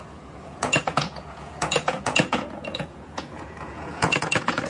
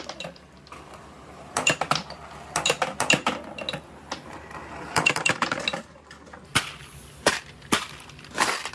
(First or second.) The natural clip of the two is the second